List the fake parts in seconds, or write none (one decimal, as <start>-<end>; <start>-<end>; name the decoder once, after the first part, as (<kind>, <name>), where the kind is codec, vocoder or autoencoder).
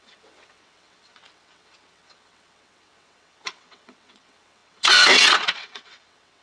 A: 0.0-6.4 (vocoder, WaveNeXt)